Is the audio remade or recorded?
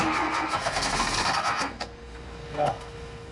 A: remade